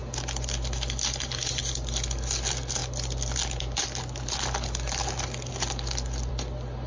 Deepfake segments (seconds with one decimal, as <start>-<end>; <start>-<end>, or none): none